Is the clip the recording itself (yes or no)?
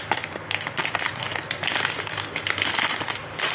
yes